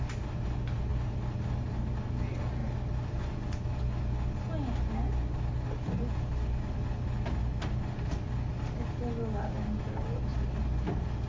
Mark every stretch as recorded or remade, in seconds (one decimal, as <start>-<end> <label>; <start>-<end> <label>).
0.0-11.3 recorded